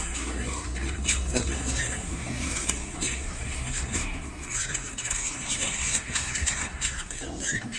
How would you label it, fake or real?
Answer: fake